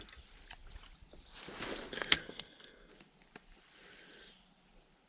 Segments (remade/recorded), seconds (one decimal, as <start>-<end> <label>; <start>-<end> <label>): 0.0-2.2 recorded; 2.2-2.9 remade; 2.9-5.1 recorded